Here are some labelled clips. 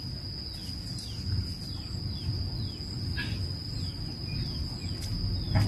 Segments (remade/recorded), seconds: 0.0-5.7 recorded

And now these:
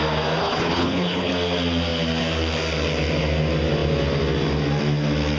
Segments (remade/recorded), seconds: 0.0-0.4 recorded; 0.4-1.3 remade; 1.3-5.4 recorded

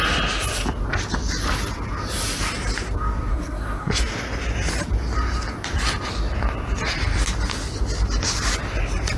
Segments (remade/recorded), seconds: 0.0-3.3 recorded; 3.3-4.0 remade; 4.0-9.2 recorded

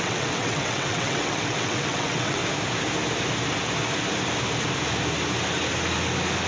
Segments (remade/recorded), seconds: 0.0-2.4 remade; 2.4-6.5 recorded